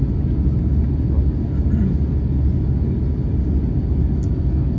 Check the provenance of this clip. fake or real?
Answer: real